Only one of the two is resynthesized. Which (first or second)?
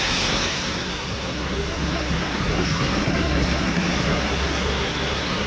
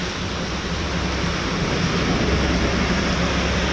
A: first